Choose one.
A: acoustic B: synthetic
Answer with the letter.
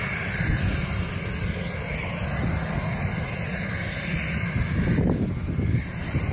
A